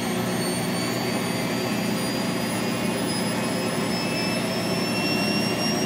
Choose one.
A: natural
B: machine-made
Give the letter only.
A